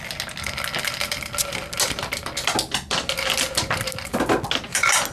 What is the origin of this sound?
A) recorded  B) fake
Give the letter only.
A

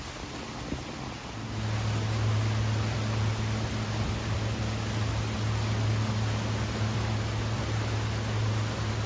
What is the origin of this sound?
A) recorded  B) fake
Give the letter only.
A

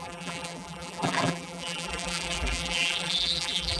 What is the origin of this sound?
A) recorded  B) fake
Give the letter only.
B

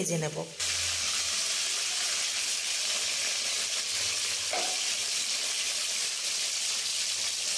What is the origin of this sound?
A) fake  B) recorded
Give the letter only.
B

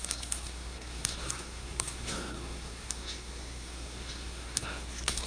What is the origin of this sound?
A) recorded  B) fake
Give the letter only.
B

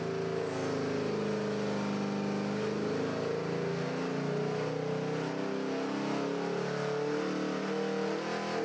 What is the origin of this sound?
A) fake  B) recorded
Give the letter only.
B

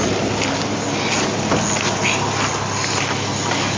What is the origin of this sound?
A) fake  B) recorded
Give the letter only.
B